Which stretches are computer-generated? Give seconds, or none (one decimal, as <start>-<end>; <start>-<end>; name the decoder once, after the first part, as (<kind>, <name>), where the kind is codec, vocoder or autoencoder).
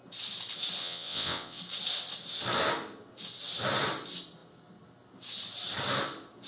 0.8-1.6 (vocoder, WaveNeXt)